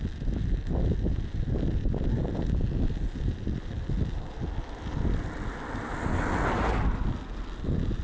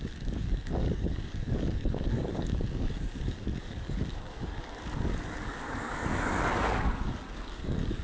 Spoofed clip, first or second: second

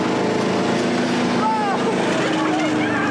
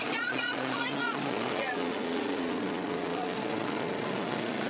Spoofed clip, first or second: second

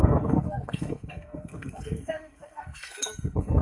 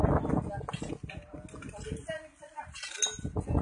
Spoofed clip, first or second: first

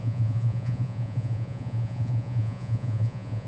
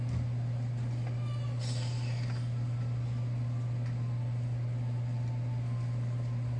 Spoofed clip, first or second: first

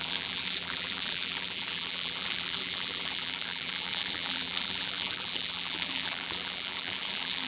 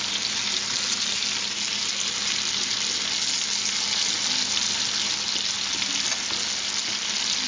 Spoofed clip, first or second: first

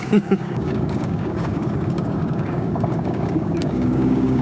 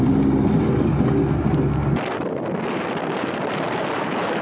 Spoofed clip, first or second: first